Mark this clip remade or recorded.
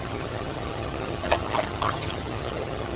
remade